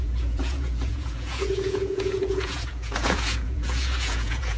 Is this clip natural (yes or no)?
no